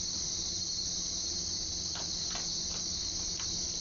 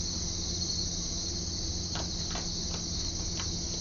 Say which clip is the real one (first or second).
second